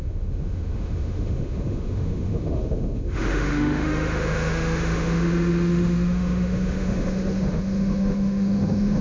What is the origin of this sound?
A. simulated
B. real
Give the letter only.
A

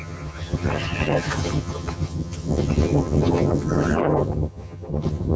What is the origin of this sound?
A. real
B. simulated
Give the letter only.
B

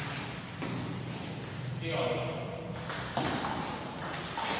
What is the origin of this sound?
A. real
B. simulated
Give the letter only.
A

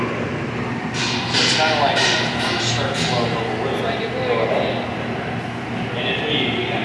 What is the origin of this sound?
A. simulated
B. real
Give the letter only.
B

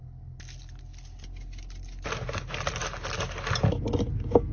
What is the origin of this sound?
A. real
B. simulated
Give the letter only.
A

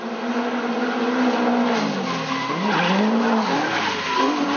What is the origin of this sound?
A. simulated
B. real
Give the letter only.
B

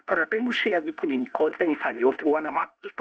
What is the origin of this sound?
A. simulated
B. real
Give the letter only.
A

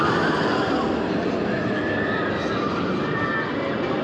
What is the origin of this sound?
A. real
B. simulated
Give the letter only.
A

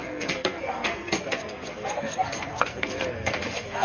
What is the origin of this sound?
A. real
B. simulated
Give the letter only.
B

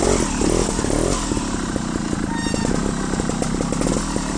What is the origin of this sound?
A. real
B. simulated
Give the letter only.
A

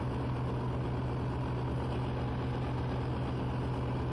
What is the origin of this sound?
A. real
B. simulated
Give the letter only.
A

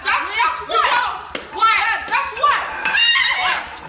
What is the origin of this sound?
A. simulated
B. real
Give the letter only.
A